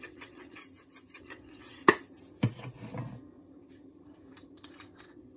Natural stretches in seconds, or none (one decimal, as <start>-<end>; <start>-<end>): 0.6-1.2; 1.8-5.0